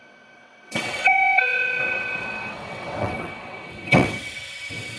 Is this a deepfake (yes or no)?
yes